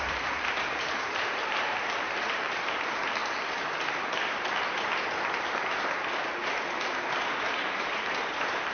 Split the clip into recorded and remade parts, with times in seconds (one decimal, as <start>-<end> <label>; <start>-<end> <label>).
0.0-3.2 remade; 3.2-7.1 recorded; 7.1-8.7 remade

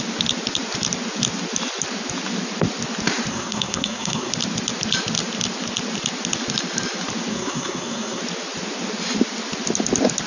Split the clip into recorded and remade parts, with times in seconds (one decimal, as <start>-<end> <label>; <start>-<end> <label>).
0.0-3.3 recorded; 3.3-4.3 remade; 4.3-7.3 recorded; 7.3-8.2 remade; 8.2-10.3 recorded